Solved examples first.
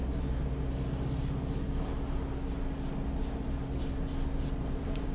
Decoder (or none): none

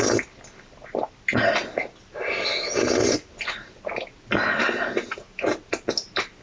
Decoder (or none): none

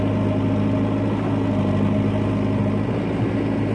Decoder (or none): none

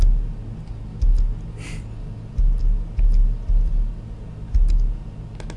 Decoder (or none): none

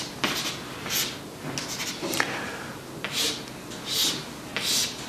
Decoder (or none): none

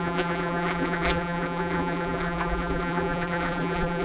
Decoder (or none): vocoder, BigVGAN v2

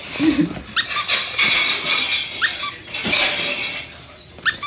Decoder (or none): none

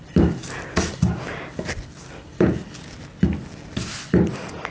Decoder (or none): none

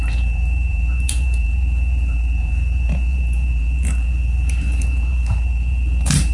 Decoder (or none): vocoder, BigVGAN v2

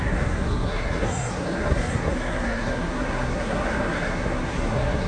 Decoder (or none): codec, SNAC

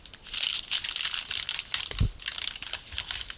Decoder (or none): none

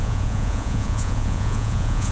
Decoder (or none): vocoder, Vocos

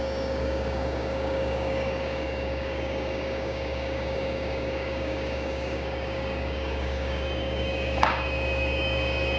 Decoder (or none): codec, DAC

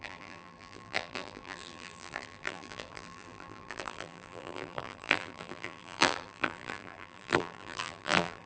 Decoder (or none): vocoder, BigVGAN v2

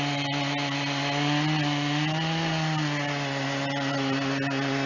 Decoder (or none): none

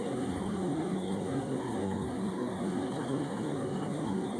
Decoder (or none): codec, SNAC